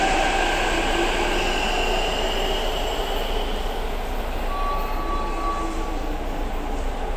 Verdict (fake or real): real